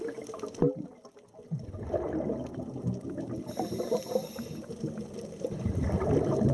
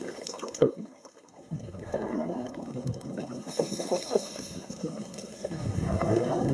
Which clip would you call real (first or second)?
first